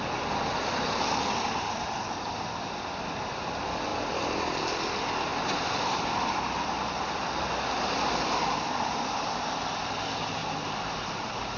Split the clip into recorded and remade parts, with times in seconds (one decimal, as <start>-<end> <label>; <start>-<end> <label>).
0.0-5.3 recorded; 5.3-6.0 remade; 6.0-10.4 recorded; 10.4-11.6 remade